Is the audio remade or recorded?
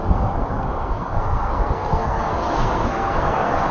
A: remade